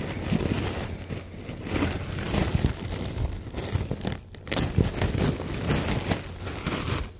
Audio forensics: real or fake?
real